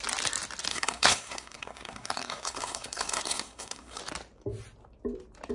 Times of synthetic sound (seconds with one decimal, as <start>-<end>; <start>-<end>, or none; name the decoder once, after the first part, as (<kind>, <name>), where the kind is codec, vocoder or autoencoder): 0.7-4.0 (codec, SNAC)